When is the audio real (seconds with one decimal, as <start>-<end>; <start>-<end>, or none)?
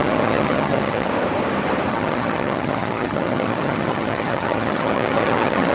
1.1-1.9